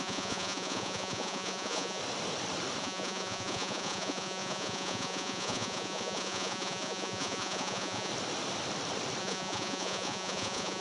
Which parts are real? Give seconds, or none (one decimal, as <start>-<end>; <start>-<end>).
2.0-2.8; 8.1-9.2